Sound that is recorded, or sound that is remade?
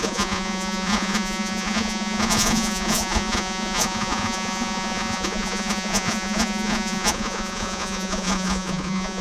remade